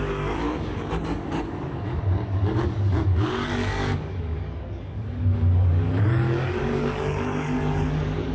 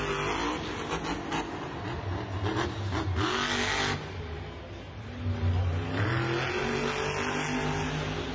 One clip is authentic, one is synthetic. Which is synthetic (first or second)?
first